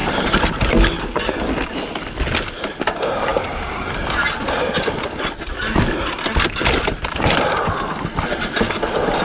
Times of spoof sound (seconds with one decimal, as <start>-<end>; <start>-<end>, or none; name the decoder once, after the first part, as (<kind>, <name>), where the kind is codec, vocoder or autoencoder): 0.0-0.7 (vocoder, BigVGAN v2); 3.3-4.7